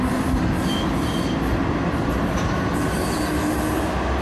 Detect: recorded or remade recorded